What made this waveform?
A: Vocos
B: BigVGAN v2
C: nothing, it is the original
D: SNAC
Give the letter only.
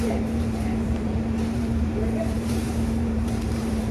B